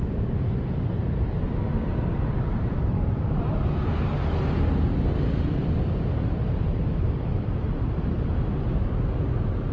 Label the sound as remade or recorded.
remade